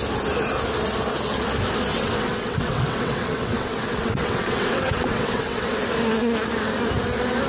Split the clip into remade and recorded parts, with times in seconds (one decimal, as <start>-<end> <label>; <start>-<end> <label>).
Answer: 0.0-1.9 recorded; 1.9-5.7 remade; 5.7-7.5 recorded